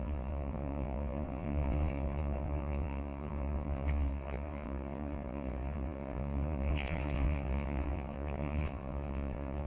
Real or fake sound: fake